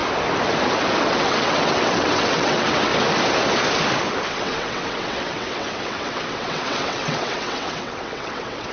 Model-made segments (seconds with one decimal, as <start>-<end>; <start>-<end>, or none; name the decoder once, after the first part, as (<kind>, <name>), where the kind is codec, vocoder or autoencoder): 1.0-2.9 (vocoder, WaveNeXt); 4.3-8.7